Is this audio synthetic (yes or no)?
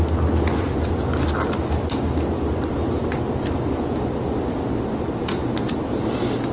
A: no